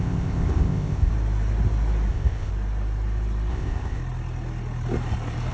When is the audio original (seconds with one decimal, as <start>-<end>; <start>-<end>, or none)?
1.1-2.1; 2.5-3.5; 4.0-5.5